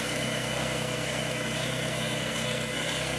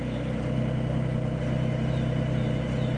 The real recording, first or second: second